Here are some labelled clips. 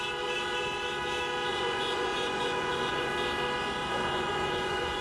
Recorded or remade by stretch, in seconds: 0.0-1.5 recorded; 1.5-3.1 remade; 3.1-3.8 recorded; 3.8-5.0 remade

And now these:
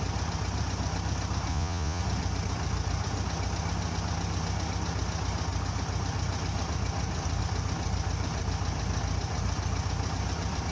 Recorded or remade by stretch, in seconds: 0.0-1.5 recorded; 1.5-2.0 remade; 2.0-10.7 recorded

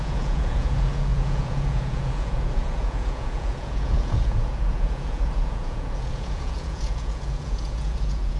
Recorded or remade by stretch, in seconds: 0.0-8.4 remade

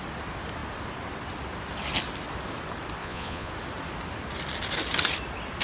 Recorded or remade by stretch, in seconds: 0.0-3.0 recorded; 3.0-3.5 remade; 3.5-5.6 recorded

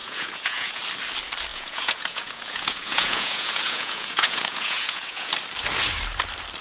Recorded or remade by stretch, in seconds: 0.0-0.8 remade; 0.8-1.5 recorded; 1.5-5.3 remade; 5.3-6.6 recorded